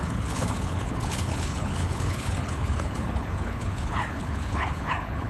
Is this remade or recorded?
remade